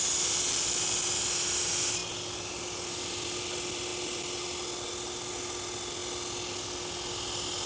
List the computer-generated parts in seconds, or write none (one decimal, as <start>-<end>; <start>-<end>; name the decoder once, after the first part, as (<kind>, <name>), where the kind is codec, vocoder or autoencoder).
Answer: none